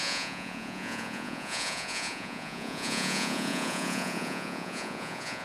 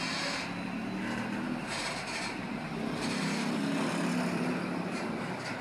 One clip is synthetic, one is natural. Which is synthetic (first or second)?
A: first